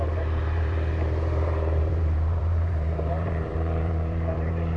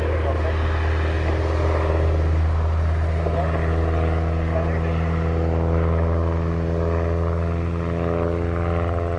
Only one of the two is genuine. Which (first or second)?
second